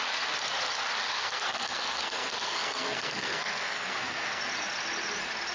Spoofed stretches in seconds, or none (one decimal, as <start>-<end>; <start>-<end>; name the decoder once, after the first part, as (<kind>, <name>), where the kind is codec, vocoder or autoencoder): 1.1-4.4 (codec, SNAC)